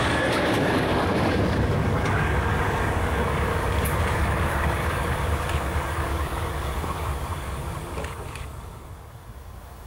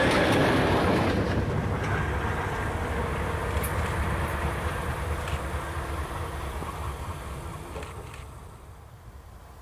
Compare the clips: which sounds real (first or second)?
second